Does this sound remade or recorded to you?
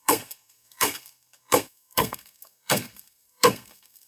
remade